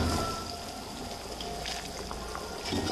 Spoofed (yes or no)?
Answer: no